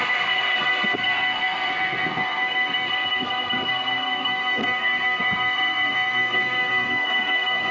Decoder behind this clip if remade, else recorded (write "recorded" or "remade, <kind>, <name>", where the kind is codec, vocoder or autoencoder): remade, codec, SNAC